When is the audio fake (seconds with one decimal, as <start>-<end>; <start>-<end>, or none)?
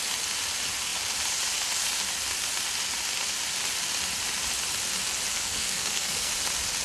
5.3-6.3